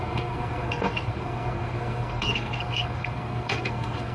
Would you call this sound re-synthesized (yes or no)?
yes